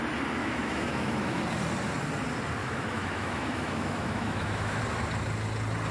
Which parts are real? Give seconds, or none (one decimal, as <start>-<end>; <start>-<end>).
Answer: 0.0-0.4; 1.4-2.6; 4.8-5.9